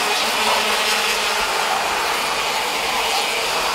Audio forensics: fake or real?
real